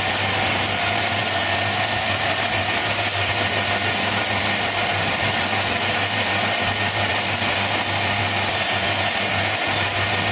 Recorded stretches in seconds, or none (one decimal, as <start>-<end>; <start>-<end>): 0.0-10.3